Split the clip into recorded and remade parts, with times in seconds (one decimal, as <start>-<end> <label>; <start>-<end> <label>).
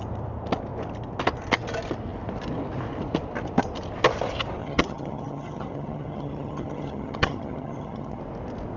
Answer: 0.0-4.6 recorded; 4.6-8.2 remade; 8.2-8.8 recorded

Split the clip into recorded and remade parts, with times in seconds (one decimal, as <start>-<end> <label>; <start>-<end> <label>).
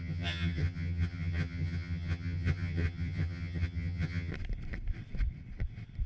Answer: 0.0-4.3 remade; 4.3-6.1 recorded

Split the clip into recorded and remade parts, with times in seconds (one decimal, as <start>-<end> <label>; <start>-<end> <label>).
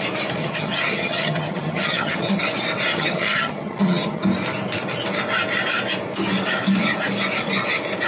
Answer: 0.0-0.4 recorded; 0.4-2.4 remade; 2.4-2.9 recorded; 2.9-4.2 remade; 4.2-8.1 recorded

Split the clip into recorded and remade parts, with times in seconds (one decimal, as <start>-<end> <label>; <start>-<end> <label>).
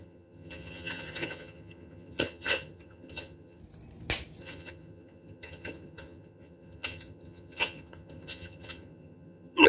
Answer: 0.0-3.6 remade; 3.6-4.4 recorded; 4.4-9.7 remade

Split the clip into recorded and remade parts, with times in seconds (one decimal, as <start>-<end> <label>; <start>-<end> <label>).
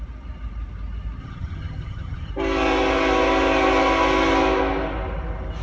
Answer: 0.0-1.2 recorded; 1.2-2.3 remade; 2.3-5.6 recorded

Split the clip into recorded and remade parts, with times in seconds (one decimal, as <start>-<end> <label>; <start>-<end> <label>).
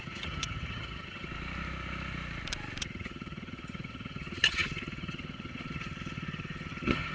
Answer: 0.0-1.3 remade; 1.3-2.8 recorded; 2.8-7.1 remade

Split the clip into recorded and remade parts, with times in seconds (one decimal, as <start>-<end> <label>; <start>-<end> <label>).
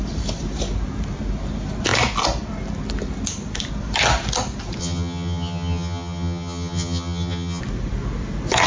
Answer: 0.0-4.8 recorded; 4.8-7.6 remade; 7.6-8.7 recorded